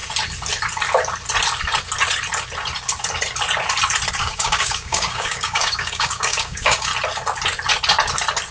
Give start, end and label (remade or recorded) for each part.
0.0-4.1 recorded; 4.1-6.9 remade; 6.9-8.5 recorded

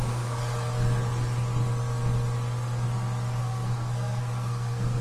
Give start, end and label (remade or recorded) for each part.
0.0-0.4 remade; 0.4-3.4 recorded; 3.4-5.0 remade

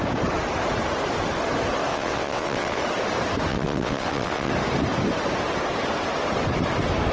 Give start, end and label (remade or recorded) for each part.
0.0-1.9 recorded; 1.9-2.8 remade; 2.8-3.5 recorded; 3.5-4.5 remade; 4.5-7.1 recorded

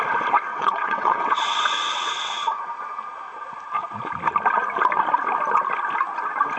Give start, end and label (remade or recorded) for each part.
0.0-0.5 recorded; 0.5-2.6 remade; 2.6-6.6 recorded